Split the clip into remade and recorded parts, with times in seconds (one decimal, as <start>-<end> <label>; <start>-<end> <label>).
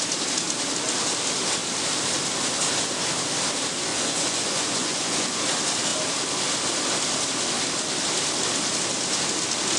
0.0-3.9 recorded; 3.9-5.4 remade; 5.4-9.8 recorded